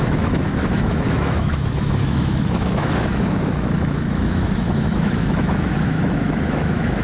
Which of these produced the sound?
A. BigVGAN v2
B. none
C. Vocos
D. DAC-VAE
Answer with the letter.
D